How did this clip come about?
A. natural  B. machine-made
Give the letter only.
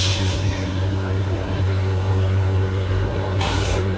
B